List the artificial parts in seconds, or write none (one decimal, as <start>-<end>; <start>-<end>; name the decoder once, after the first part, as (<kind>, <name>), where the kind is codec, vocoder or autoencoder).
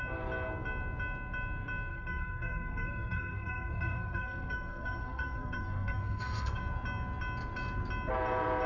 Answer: 1.9-6.6 (codec, SNAC)